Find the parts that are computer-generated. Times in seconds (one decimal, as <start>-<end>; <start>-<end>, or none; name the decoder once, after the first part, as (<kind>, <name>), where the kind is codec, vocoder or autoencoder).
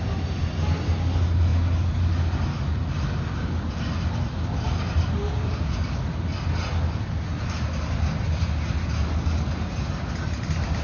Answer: none